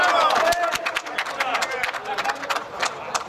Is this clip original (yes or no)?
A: yes